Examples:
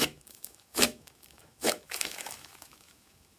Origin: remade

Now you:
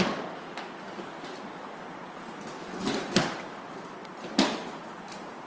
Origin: recorded